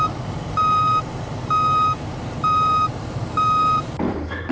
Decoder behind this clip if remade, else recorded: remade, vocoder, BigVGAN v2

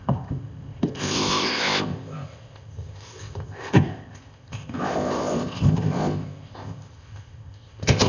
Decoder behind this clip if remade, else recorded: remade, codec, ZipCodec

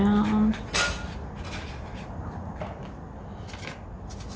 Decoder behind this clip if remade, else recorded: recorded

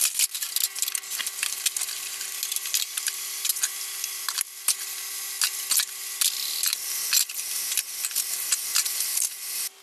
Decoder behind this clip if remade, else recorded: recorded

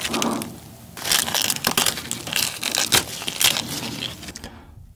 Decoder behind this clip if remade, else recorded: recorded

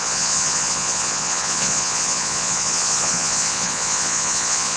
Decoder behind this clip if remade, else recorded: remade, vocoder, Vocos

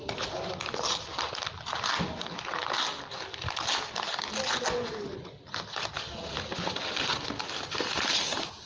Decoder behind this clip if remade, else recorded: recorded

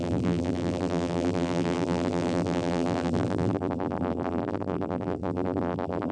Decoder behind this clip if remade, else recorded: remade, vocoder, BigVGAN v2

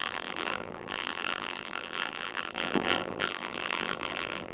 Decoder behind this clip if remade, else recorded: remade, vocoder, BigVGAN v2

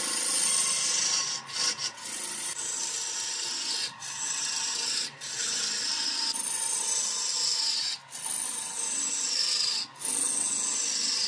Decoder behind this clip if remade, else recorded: recorded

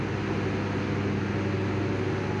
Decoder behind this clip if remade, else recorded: recorded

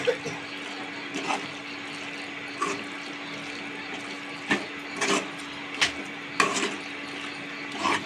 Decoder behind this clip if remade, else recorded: recorded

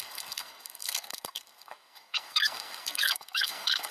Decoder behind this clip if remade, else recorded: remade, codec, SNAC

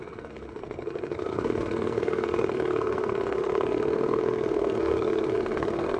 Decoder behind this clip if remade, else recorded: remade, codec, SNAC